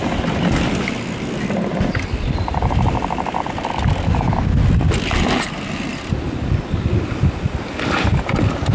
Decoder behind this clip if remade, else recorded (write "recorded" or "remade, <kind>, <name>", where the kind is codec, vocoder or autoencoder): recorded